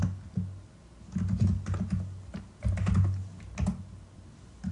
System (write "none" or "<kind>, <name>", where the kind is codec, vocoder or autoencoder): none